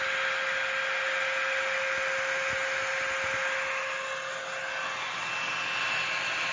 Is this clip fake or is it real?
real